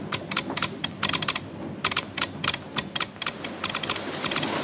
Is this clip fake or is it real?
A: real